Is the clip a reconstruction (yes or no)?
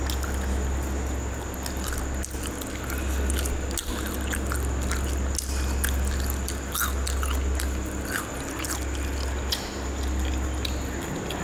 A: no